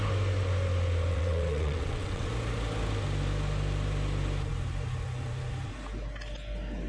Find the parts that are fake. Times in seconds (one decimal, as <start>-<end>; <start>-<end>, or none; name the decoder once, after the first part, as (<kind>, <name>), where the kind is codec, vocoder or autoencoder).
1.1-2.3 (vocoder, WaveNeXt)